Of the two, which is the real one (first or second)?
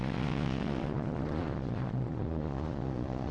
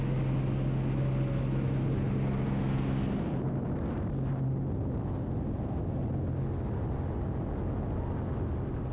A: second